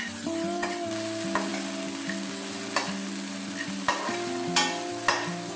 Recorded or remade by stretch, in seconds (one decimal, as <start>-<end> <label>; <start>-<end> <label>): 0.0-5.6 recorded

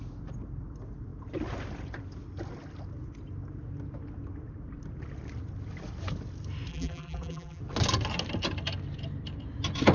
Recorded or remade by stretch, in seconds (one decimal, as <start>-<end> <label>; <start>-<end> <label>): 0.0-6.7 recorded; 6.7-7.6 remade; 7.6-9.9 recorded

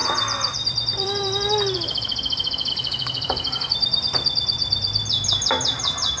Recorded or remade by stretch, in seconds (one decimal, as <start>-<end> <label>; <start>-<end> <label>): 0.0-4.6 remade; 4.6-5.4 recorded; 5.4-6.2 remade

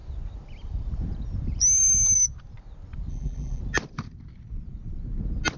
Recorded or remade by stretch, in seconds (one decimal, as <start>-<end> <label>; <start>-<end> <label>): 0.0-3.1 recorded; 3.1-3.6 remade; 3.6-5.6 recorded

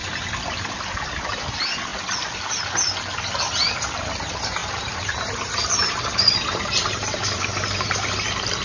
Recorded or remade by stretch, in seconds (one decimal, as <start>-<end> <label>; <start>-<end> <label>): 0.0-4.6 recorded; 4.6-7.4 remade; 7.4-8.6 recorded